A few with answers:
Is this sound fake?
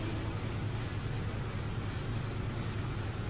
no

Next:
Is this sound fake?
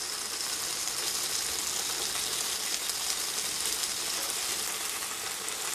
no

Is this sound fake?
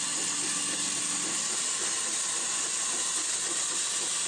no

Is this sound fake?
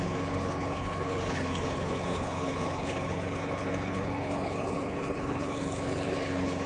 yes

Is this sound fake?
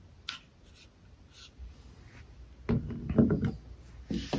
no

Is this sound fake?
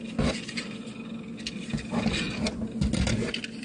no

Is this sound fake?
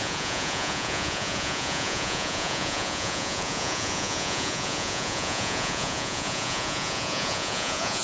yes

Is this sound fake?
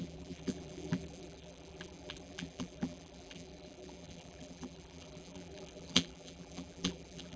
yes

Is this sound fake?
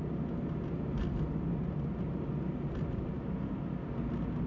no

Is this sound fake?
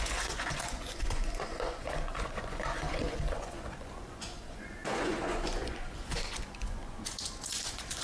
yes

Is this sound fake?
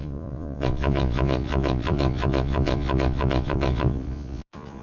yes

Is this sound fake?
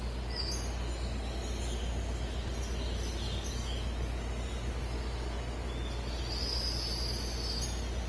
no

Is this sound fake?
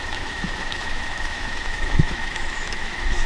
yes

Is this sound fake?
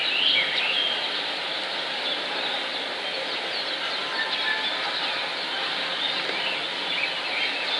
no